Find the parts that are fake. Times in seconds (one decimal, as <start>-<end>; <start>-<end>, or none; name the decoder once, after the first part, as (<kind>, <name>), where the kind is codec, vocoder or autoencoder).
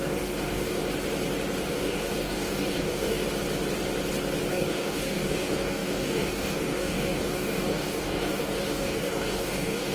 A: 0.0-0.8 (codec, DAC); 1.7-3.2; 4.5-9.9